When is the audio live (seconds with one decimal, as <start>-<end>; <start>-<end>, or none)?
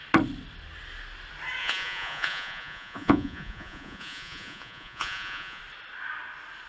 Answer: 0.0-1.6; 5.6-6.7